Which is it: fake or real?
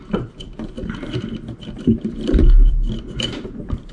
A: fake